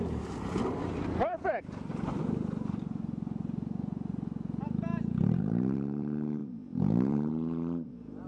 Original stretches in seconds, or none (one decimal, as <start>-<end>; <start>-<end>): 1.9-5.4